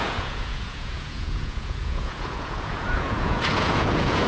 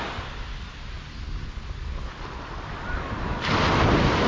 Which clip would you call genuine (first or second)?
second